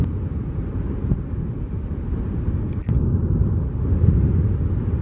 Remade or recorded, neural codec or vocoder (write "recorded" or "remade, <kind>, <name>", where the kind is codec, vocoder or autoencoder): recorded